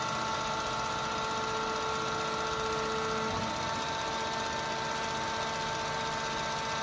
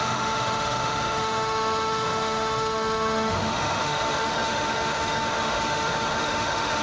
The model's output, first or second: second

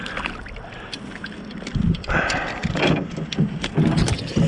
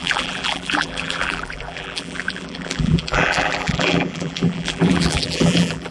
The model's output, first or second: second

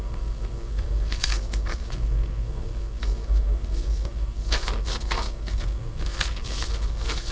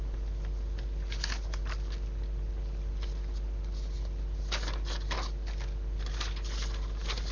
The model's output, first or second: first